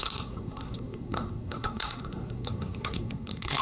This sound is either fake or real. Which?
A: fake